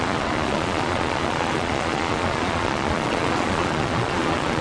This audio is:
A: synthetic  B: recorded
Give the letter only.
A